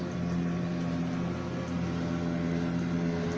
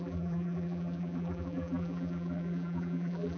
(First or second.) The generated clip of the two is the second